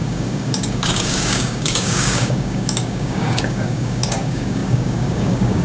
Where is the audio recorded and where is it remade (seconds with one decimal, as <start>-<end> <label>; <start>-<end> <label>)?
0.0-5.6 remade